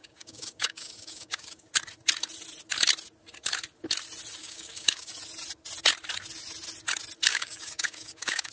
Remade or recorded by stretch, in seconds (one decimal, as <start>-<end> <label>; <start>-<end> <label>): 0.0-1.7 remade; 1.7-4.4 recorded; 4.4-5.1 remade; 5.1-7.3 recorded; 7.3-8.5 remade